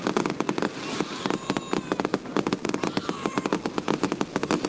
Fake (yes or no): no